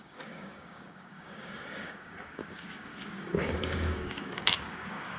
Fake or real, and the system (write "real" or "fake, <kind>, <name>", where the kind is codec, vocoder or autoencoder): fake, codec, DAC